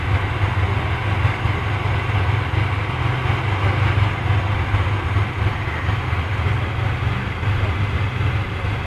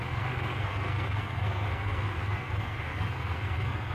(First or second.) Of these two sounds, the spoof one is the second